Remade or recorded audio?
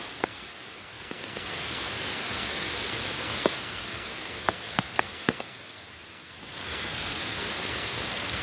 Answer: remade